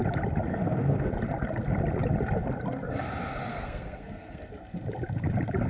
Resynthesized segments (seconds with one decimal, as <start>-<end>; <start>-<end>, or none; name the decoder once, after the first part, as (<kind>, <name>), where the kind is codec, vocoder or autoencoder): 0.5-1.1 (codec, SNAC); 3.5-4.5